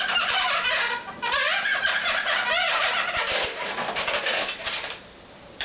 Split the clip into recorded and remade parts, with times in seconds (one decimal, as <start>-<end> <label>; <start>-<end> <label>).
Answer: 0.0-5.6 remade